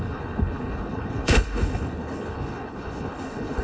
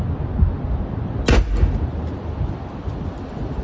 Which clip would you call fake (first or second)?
first